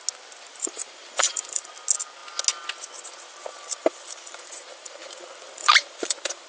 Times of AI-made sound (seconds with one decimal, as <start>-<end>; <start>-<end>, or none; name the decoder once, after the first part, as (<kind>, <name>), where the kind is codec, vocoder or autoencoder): 0.5-1.7 (vocoder, BigVGAN v2); 3.5-6.5